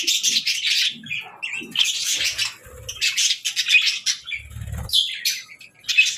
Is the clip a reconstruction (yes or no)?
no